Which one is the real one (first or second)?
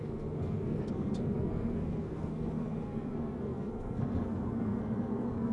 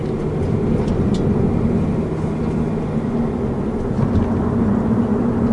second